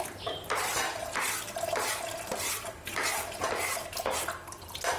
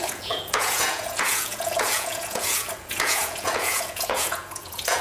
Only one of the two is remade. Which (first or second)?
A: second